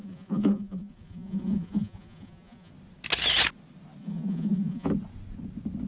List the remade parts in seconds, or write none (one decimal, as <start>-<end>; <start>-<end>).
0.0-2.7; 4.0-4.9

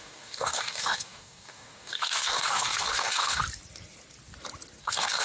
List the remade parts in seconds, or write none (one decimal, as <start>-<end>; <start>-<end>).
0.0-3.4; 4.8-5.2